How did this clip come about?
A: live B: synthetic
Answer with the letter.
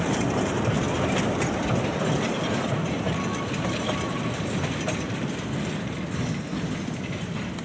A